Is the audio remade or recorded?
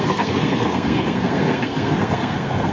remade